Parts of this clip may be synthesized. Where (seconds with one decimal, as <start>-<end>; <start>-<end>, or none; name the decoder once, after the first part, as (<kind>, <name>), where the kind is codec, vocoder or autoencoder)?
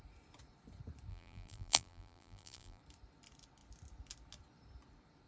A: 1.1-2.8 (vocoder, BigVGAN v2)